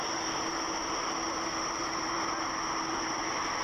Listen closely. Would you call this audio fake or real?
real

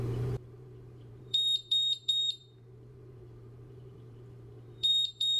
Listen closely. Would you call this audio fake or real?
fake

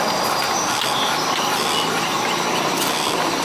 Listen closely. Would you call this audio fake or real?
real